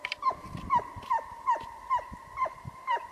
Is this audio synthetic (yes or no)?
yes